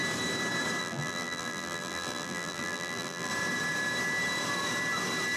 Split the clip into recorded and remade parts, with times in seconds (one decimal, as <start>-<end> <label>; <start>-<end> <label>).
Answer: 0.0-0.8 recorded; 0.8-3.3 remade; 3.3-5.4 recorded